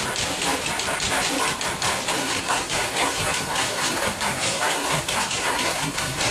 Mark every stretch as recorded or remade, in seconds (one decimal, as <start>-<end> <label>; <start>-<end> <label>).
0.0-2.2 recorded; 2.2-6.3 remade